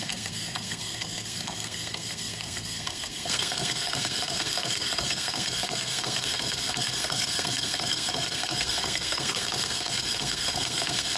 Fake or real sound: fake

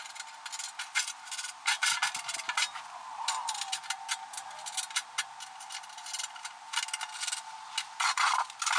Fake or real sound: real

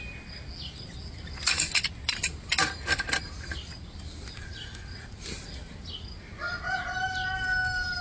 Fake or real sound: real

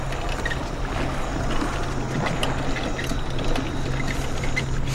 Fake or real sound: real